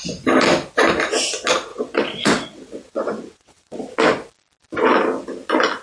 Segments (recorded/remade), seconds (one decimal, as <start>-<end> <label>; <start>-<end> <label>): 0.0-1.7 recorded; 1.7-3.8 remade; 3.8-5.8 recorded

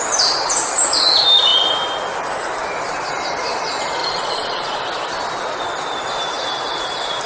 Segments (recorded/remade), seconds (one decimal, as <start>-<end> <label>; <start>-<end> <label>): 0.0-4.0 recorded; 4.0-4.8 remade; 4.8-7.3 recorded

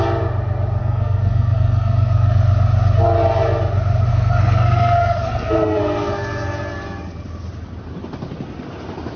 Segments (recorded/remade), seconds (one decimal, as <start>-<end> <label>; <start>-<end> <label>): 0.0-0.8 recorded; 0.8-2.3 remade; 2.3-4.1 recorded; 4.1-5.8 remade; 5.8-9.2 recorded

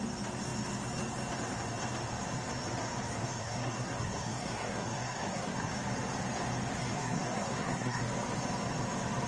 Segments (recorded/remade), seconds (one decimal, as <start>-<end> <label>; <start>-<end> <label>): 0.0-3.2 recorded; 3.2-5.7 remade; 5.7-6.8 recorded; 6.8-8.0 remade; 8.0-9.3 recorded

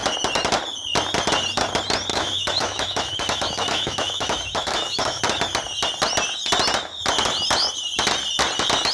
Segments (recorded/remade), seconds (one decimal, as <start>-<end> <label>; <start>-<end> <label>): 0.0-2.1 recorded; 2.1-5.2 remade; 5.2-8.9 recorded

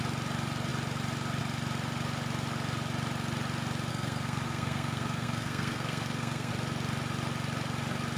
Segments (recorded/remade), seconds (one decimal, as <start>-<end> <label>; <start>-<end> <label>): 0.0-3.9 recorded; 3.9-6.5 remade; 6.5-8.2 recorded

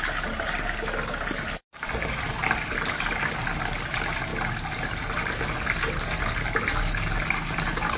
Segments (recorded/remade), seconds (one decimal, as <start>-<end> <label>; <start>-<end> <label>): 0.0-8.0 recorded